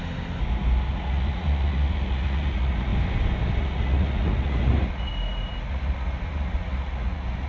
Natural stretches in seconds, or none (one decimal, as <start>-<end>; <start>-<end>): 0.0-0.9; 2.9-3.6; 5.1-5.7